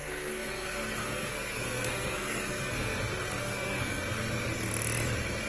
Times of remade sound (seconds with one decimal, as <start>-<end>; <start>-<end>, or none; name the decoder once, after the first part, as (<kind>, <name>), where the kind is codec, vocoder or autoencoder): 0.0-3.0 (codec, SNAC); 3.4-4.0